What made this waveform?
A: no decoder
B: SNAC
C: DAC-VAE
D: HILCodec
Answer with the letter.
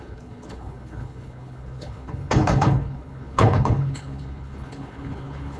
D